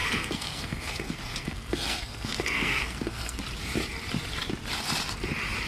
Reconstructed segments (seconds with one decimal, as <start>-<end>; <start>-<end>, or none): 0.0-3.4